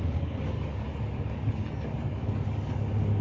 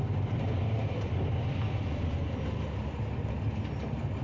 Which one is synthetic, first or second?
first